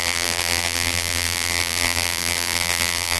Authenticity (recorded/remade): remade